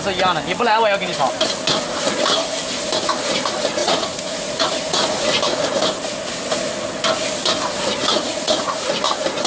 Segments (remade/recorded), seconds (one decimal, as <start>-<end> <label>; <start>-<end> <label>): 0.0-3.8 recorded; 3.8-5.8 remade; 5.8-8.1 recorded; 8.1-9.0 remade; 9.0-9.5 recorded